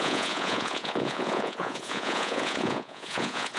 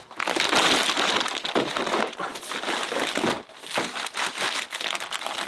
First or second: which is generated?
first